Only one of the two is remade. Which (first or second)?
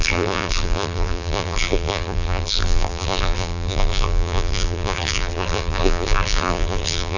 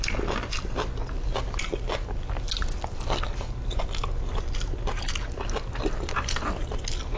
first